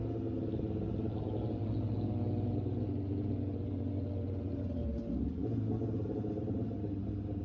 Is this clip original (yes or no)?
yes